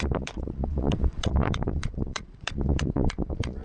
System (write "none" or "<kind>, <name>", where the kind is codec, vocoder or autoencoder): vocoder, Vocos